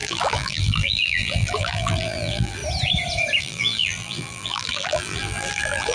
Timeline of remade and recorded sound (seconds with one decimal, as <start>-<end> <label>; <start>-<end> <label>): 0.0-2.6 remade; 2.6-3.4 recorded; 3.4-5.9 remade